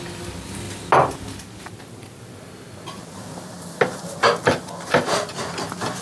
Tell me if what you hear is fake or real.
real